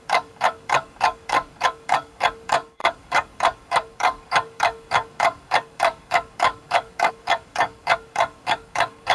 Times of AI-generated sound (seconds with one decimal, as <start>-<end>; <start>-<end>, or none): 0.0-9.1